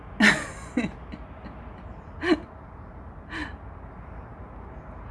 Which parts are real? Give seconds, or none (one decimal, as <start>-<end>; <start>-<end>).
0.0-5.1